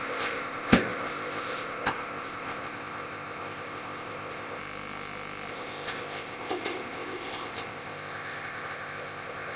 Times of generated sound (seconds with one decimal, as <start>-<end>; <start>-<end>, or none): 0.0-4.6; 5.5-9.6